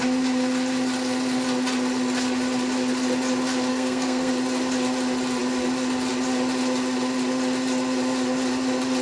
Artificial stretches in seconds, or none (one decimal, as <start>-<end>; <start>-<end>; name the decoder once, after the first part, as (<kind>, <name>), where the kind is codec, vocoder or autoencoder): 3.7-4.3 (codec, SNAC)